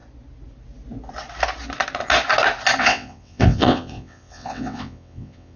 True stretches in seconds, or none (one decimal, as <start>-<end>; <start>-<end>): 0.0-2.8